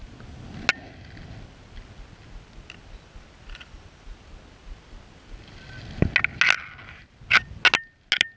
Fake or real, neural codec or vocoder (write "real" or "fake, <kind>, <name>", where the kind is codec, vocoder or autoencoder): real